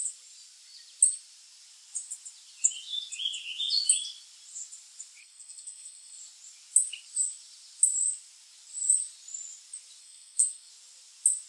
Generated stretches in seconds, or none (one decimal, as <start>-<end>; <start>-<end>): 5.2-6.2; 10.0-10.7